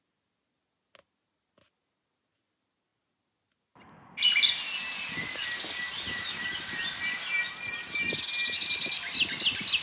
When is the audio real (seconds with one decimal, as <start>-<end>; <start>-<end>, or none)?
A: 0.0-9.8